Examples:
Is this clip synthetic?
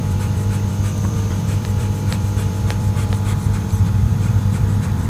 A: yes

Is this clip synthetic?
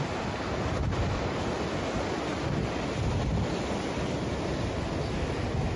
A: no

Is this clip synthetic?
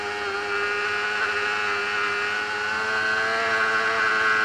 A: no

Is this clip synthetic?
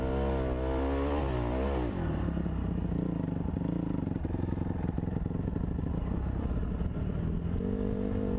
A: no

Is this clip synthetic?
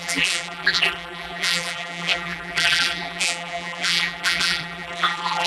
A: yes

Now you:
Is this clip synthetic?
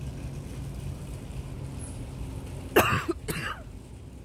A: no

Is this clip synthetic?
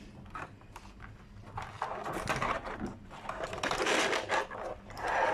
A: no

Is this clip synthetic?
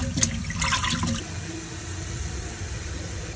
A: yes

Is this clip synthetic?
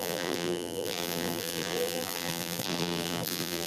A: yes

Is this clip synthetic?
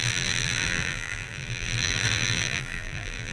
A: yes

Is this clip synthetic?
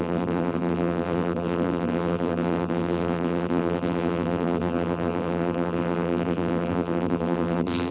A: yes